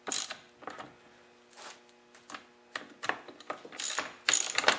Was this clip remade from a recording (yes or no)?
no